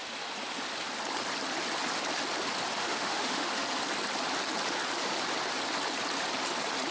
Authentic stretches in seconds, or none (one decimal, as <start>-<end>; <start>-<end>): 0.0-2.8; 3.5-6.9